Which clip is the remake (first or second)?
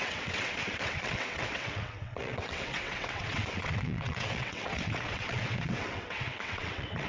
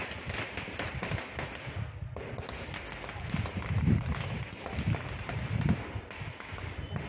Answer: first